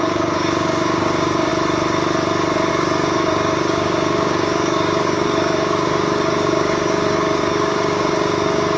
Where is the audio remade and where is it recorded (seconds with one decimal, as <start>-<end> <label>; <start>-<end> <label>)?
0.0-1.5 remade; 1.5-2.7 recorded; 2.7-8.8 remade